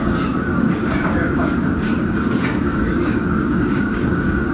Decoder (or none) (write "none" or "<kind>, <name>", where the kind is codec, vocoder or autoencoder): codec, DAC